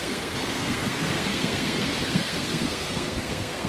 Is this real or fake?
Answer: fake